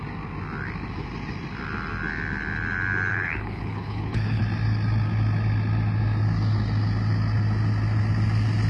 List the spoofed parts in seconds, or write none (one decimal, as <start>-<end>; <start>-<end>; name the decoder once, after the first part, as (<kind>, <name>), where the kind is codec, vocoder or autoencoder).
3.1-4.4 (codec, HILCodec)